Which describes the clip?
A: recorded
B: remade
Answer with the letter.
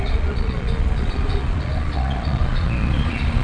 B